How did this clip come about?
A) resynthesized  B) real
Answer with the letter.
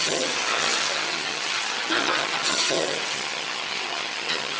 A